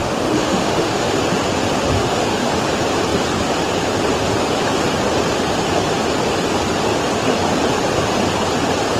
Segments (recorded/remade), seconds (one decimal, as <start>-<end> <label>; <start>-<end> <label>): 0.0-1.1 remade; 1.1-1.9 recorded; 1.9-2.5 remade; 2.5-9.0 recorded